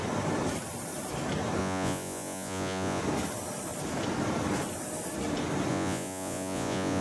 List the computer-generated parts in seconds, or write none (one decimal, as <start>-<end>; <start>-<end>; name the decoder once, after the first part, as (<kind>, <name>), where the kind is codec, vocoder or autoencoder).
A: 1.6-3.0 (vocoder, Vocos); 5.7-7.0